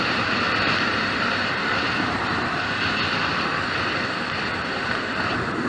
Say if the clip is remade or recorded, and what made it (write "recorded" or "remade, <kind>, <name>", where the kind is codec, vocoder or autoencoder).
remade, vocoder, BigVGAN v2